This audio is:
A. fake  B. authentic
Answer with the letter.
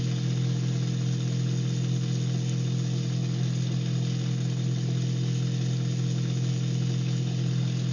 B